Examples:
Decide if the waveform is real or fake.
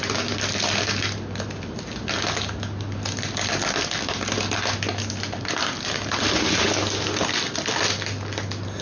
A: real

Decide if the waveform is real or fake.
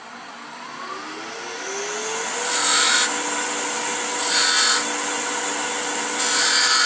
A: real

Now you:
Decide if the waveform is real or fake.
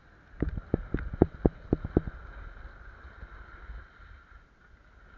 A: real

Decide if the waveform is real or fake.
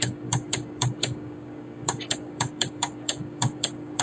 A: fake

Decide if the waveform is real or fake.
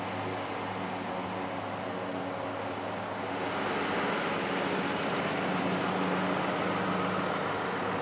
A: real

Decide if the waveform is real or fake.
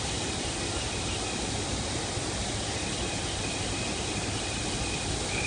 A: real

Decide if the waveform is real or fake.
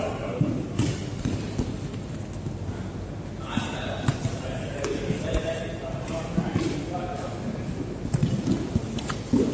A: real